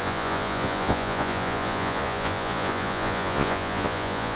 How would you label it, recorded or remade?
remade